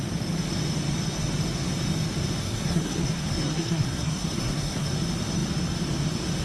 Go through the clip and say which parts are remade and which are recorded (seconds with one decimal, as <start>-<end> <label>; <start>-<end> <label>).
0.0-2.4 recorded; 2.4-4.9 remade; 4.9-6.4 recorded